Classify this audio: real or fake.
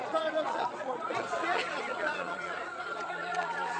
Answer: fake